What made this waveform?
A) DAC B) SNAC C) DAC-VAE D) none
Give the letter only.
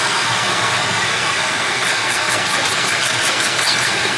B